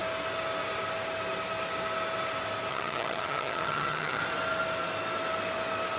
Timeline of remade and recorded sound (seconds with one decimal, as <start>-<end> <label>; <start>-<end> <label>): 0.0-2.7 recorded; 2.7-4.2 remade; 4.2-6.0 recorded